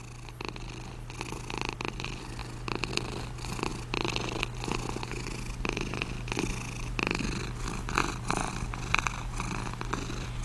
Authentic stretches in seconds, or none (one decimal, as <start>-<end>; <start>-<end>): 0.0-10.4